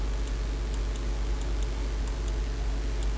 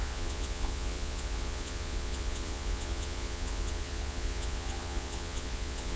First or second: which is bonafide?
first